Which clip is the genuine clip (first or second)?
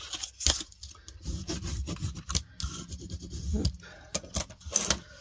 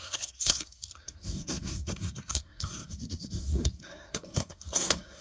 first